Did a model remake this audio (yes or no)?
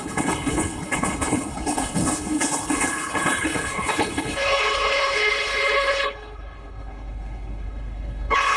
yes